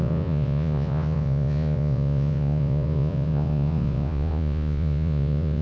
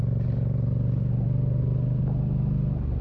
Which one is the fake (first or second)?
first